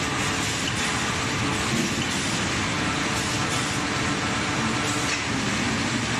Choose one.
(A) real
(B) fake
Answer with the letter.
A